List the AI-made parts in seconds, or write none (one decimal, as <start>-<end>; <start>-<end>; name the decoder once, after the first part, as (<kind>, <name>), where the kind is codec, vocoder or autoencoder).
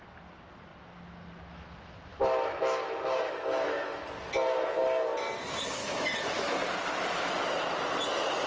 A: 2.1-4.0 (autoencoder, DAC-VAE); 5.8-6.6